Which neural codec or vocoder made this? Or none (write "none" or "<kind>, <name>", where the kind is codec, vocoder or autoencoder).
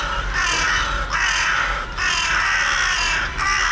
none